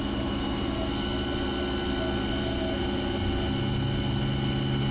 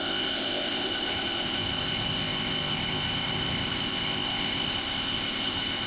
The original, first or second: first